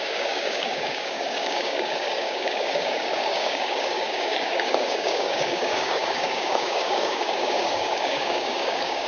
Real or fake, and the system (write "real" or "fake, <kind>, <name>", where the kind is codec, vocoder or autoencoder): fake, codec, DAC